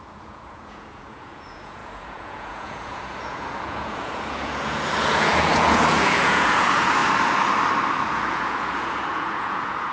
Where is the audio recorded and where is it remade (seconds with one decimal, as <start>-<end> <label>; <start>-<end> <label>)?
0.0-7.0 remade; 7.0-8.1 recorded; 8.1-9.9 remade

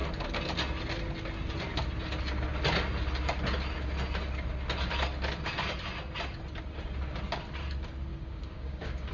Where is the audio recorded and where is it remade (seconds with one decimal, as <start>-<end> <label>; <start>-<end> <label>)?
0.0-8.1 recorded; 8.1-9.1 remade